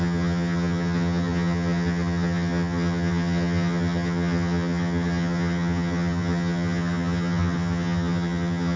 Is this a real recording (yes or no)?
no